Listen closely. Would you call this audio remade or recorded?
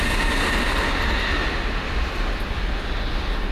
recorded